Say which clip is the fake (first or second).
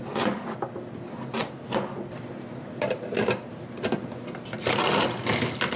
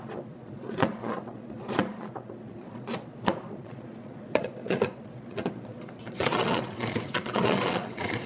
second